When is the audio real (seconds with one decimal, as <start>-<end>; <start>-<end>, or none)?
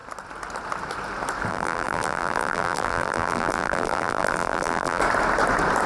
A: 0.0-1.5; 5.0-5.9